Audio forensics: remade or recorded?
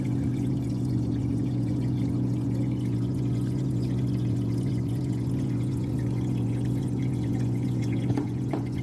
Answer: remade